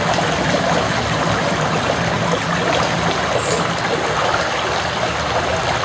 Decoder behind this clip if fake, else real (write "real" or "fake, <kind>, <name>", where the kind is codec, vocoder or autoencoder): real